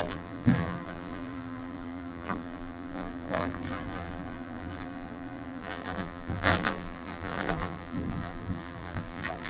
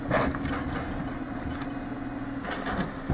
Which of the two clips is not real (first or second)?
first